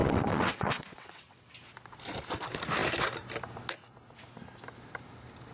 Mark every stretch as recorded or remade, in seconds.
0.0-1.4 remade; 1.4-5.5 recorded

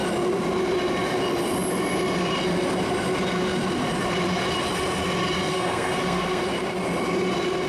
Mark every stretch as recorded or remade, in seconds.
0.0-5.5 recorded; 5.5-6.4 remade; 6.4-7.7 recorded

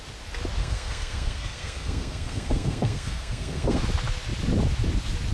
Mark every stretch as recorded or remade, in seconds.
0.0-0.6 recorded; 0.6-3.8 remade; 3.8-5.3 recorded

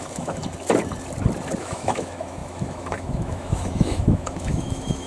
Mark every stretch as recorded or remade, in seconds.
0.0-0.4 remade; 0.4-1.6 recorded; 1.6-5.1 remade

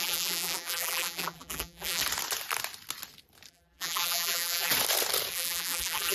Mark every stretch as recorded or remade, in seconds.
0.0-2.0 remade; 2.0-3.5 recorded; 3.5-4.7 remade; 4.7-5.3 recorded; 5.3-6.1 remade

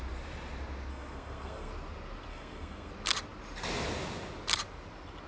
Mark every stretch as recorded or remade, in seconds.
0.0-0.9 recorded; 0.9-1.7 remade; 1.7-2.3 recorded; 2.3-2.9 remade; 2.9-5.3 recorded